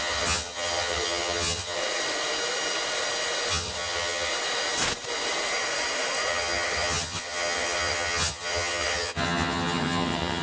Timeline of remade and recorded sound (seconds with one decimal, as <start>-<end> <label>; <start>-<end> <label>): 0.0-1.8 remade; 1.8-3.5 recorded; 3.5-4.3 remade; 4.3-6.3 recorded; 6.3-10.4 remade